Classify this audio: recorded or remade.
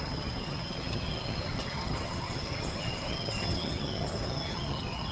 remade